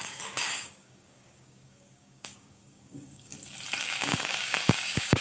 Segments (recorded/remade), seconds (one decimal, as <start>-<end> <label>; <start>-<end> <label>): 0.0-3.3 remade; 3.3-3.8 recorded; 3.8-5.2 remade

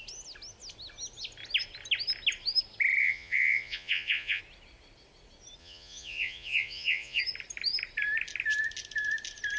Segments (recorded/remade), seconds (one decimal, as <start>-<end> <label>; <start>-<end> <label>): 0.0-3.0 recorded; 3.0-4.4 remade; 4.4-5.6 recorded; 5.6-7.2 remade; 7.2-9.6 recorded

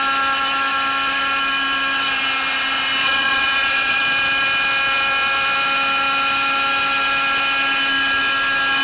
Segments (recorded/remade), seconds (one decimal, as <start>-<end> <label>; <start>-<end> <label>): 0.0-3.0 recorded; 3.0-4.0 remade; 4.0-8.8 recorded